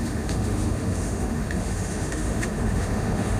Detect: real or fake fake